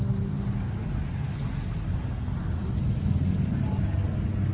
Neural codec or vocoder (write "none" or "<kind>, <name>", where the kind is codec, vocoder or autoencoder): none